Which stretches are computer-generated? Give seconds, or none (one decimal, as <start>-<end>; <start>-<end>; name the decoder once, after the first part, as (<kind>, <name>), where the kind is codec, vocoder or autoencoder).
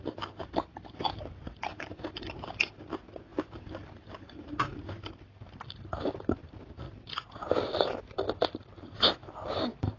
0.0-10.0 (vocoder, BigVGAN v2)